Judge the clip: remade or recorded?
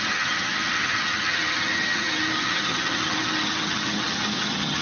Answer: remade